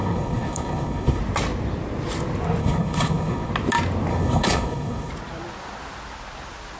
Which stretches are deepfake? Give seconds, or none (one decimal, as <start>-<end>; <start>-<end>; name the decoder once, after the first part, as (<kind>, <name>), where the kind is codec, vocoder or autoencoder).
0.0-1.2 (codec, HILCodec); 2.6-3.5; 4.1-5.1